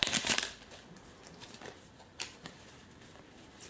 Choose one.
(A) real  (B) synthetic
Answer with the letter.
B